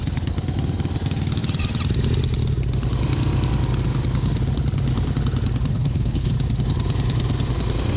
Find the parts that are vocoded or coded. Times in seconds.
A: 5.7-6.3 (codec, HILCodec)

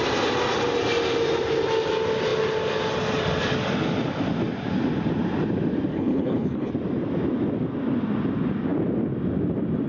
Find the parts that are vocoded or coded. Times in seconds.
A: 5.9-6.7 (codec, HILCodec)